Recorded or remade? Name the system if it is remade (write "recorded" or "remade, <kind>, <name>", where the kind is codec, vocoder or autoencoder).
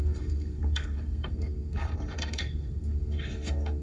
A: remade, codec, SNAC